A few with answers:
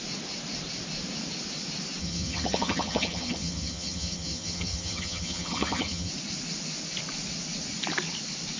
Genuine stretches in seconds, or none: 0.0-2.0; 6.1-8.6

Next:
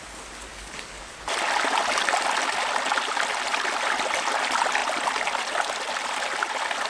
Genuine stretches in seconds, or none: 0.0-0.5; 1.1-6.9

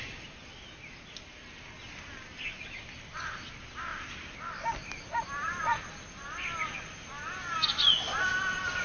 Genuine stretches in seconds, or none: 0.0-8.8

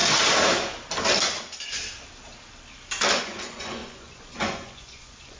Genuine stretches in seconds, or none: 0.0-3.2

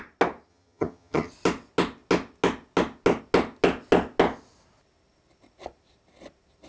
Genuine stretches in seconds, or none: 0.0-0.5; 1.3-6.7

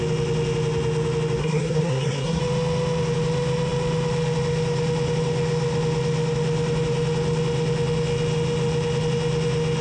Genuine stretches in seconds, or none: 0.0-1.4; 2.4-9.8

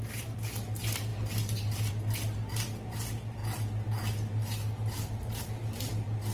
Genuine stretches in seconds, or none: 0.0-6.3